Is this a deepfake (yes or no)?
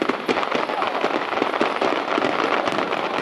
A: no